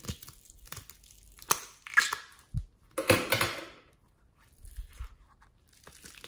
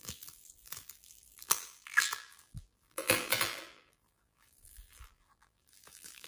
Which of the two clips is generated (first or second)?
second